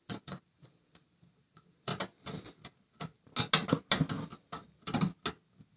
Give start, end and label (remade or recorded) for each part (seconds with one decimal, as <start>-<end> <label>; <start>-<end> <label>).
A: 0.0-1.9 remade; 1.9-5.8 recorded